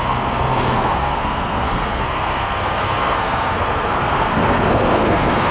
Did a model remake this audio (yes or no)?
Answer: yes